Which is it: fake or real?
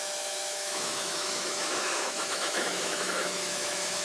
fake